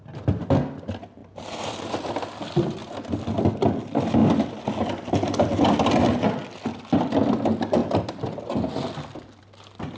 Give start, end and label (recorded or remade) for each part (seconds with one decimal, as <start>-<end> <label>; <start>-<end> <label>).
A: 0.0-1.2 recorded; 1.2-1.7 remade; 1.7-4.2 recorded; 4.2-6.2 remade; 6.2-10.0 recorded